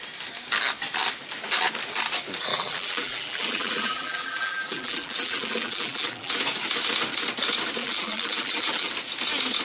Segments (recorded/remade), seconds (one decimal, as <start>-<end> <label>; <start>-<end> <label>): 0.0-2.5 recorded; 2.5-6.3 remade; 6.3-7.8 recorded; 7.8-8.9 remade; 8.9-9.6 recorded

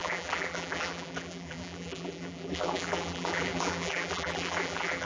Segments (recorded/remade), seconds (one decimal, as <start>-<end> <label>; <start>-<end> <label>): 0.0-5.0 remade